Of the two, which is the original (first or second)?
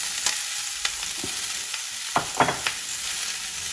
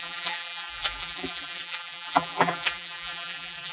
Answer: first